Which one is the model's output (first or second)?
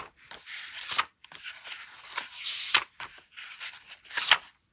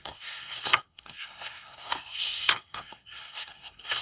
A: second